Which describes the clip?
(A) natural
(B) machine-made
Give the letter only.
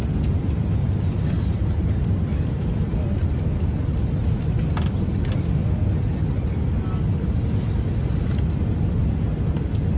A